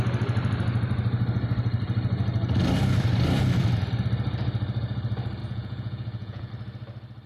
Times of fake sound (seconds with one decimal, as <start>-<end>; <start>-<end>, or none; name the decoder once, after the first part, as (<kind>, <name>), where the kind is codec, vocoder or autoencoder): 5.4-6.5 (vocoder, Vocos)